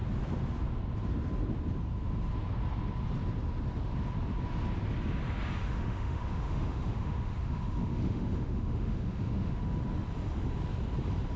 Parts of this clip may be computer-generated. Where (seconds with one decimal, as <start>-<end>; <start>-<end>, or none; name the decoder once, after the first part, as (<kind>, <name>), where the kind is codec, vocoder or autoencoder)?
5.7-9.6 (autoencoder, DAC-VAE)